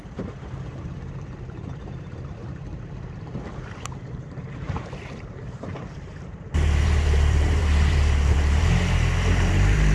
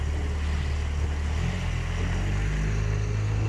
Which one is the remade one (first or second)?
first